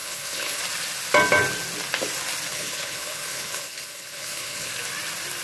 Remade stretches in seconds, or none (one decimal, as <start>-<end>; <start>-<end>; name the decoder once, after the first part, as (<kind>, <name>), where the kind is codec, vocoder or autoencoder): 0.0-0.6 (codec, HILCodec); 2.5-4.7